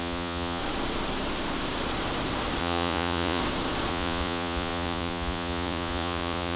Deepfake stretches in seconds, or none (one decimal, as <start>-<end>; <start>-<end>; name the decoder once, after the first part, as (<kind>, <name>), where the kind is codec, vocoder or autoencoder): 0.0-0.6 (vocoder, Vocos); 2.6-3.4; 3.9-6.6